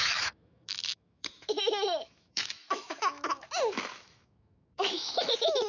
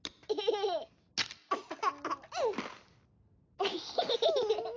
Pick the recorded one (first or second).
second